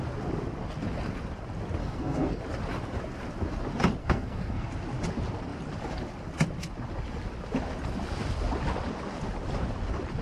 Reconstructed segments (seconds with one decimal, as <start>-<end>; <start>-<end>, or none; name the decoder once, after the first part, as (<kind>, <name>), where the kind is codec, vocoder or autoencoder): 1.8-2.4 (codec, SNAC); 4.0-4.7